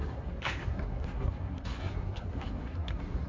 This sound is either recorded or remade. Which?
remade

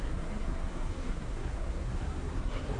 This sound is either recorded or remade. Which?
remade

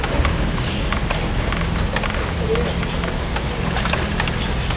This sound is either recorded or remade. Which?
recorded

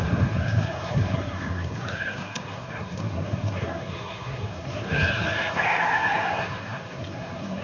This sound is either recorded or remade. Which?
remade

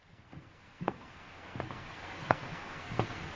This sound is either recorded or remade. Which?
remade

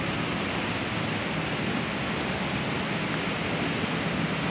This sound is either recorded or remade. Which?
recorded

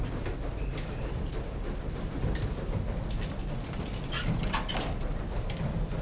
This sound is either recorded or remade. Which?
recorded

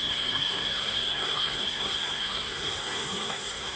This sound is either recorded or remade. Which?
remade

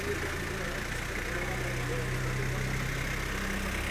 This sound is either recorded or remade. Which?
recorded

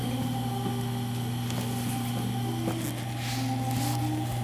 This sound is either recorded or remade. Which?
recorded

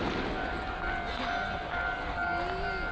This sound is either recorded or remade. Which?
recorded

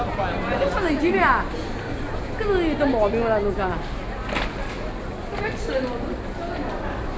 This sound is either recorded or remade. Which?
recorded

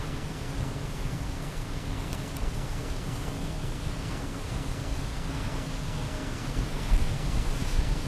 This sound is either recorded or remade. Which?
remade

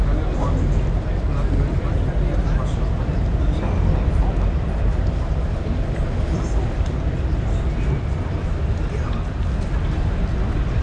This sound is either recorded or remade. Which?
recorded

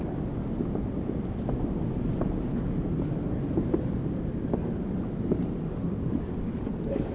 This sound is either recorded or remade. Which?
recorded